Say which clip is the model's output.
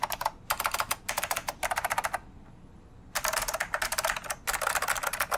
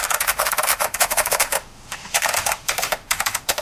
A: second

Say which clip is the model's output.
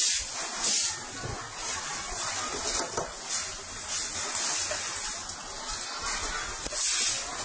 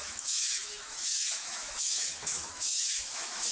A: second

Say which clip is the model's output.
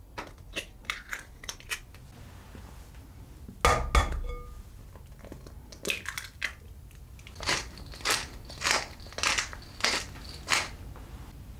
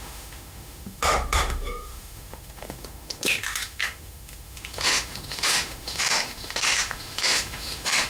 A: second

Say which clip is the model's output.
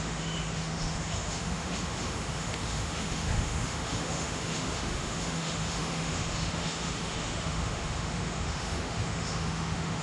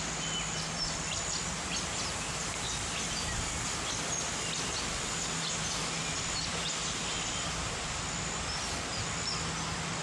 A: first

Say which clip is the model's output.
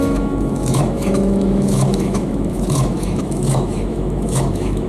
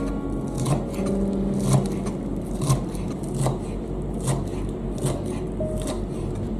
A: first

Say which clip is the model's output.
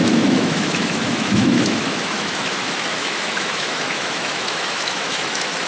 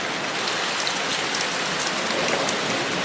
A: first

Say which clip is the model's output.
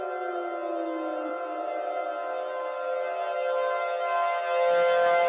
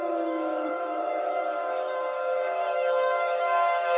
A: second